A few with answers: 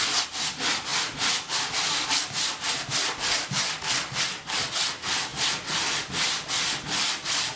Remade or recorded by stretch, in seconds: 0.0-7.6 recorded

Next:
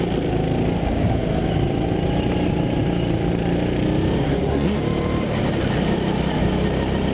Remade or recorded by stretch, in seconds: 0.0-4.2 recorded; 4.2-4.8 remade; 4.8-7.1 recorded

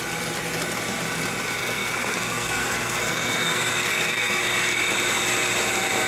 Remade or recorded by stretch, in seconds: 0.0-1.6 recorded; 1.6-4.4 remade; 4.4-6.1 recorded